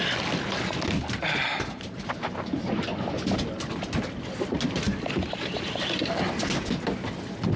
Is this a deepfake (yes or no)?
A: no